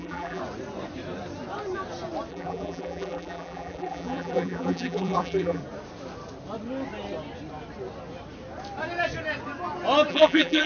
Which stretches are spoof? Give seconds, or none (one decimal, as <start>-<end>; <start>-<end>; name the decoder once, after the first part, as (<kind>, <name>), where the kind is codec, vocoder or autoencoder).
0.0-0.4 (vocoder, BigVGAN v2); 2.3-5.6; 10.1-10.7